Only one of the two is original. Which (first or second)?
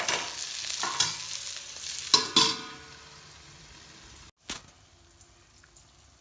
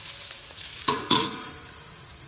first